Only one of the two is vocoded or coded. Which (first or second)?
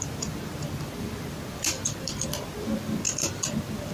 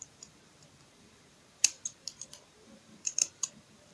second